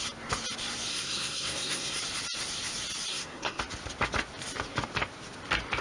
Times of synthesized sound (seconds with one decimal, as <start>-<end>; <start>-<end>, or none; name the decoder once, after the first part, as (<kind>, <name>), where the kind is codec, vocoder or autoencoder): 0.9-2.0 (codec, SNAC); 3.1-3.6